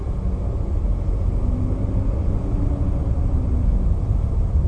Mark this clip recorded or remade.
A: recorded